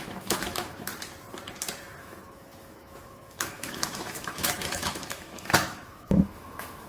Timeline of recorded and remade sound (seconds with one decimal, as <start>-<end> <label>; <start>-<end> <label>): 0.0-0.9 remade; 0.9-2.0 recorded; 2.0-6.9 remade